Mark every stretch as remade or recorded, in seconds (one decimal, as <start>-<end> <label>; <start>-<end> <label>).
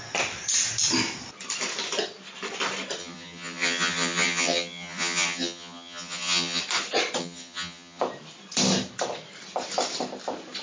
0.0-3.0 recorded; 3.0-6.6 remade; 6.6-7.2 recorded; 7.2-8.0 remade; 8.0-10.6 recorded